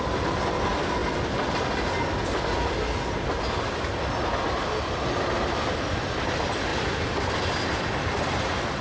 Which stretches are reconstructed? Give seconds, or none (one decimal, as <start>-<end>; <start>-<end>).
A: none